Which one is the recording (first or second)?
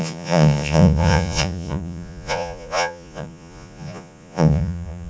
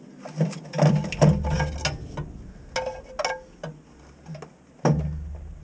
second